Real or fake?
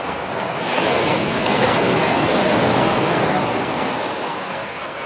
fake